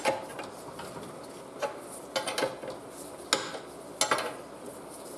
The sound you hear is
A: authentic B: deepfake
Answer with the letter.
A